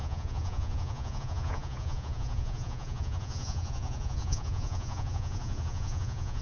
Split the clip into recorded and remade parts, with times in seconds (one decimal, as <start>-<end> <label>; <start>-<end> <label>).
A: 0.0-6.4 remade